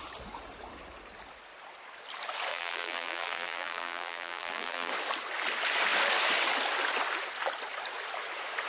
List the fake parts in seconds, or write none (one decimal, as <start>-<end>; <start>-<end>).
2.5-4.9